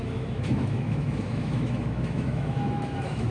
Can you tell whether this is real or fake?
fake